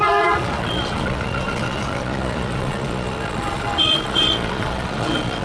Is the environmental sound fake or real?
fake